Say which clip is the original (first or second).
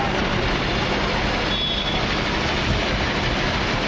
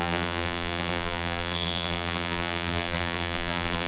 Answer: first